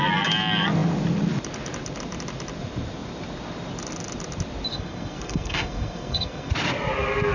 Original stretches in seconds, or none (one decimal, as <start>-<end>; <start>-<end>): 0.0-4.7; 6.5-7.3